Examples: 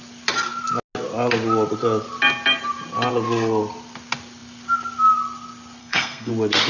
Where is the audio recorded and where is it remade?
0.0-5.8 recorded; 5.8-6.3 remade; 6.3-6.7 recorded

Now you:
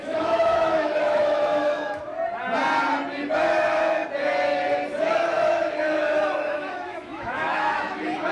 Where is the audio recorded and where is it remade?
0.0-2.1 remade; 2.1-3.3 recorded; 3.3-4.0 remade; 4.0-5.0 recorded; 5.0-8.3 remade

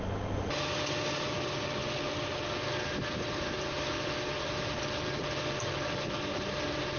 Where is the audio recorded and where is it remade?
0.0-7.0 recorded

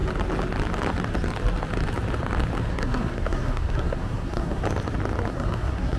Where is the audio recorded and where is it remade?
0.0-2.7 recorded; 2.7-4.6 remade; 4.6-5.3 recorded; 5.3-6.0 remade

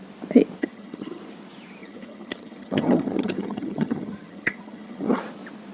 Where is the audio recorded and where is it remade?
0.0-0.6 recorded; 0.6-1.2 remade; 1.2-1.8 recorded; 1.8-5.2 remade; 5.2-5.7 recorded